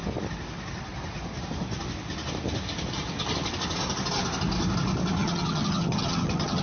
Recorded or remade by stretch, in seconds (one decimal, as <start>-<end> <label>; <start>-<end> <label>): 0.0-5.2 recorded; 5.2-6.6 remade